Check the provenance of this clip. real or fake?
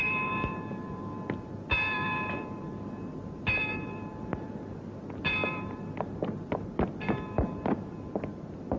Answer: real